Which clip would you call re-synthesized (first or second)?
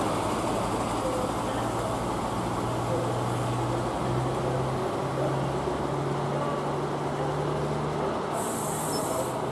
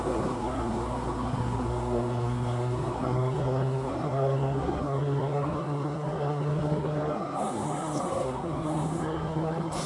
second